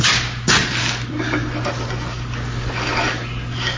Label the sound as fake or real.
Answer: real